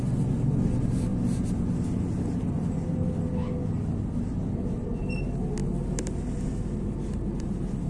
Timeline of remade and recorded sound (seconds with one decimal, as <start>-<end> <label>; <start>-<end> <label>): 0.0-7.9 recorded